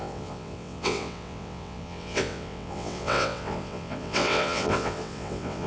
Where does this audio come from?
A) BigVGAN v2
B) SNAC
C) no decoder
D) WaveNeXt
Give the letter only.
D